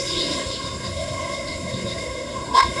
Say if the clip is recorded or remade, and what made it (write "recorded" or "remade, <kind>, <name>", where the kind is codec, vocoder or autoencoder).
remade, codec, SNAC